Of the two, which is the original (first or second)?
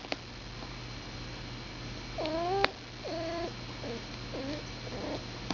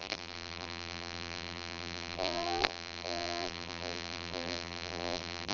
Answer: first